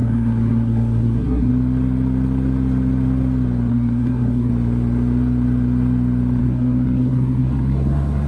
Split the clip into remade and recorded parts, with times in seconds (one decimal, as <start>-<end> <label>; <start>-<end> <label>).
0.0-1.5 remade; 1.5-3.7 recorded; 3.7-4.5 remade; 4.5-6.4 recorded; 6.4-8.3 remade